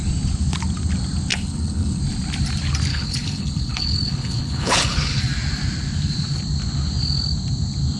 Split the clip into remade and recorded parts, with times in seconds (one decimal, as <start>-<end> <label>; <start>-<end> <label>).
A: 0.0-1.3 recorded; 1.3-2.0 remade; 2.0-2.9 recorded; 2.9-5.2 remade; 5.2-8.0 recorded